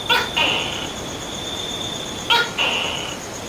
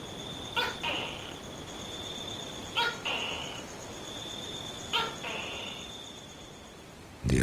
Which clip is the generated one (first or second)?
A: second